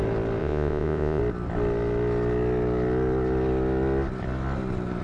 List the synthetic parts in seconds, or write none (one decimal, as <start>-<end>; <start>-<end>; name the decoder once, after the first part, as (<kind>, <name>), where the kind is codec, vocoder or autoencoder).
0.4-1.2 (vocoder, Vocos)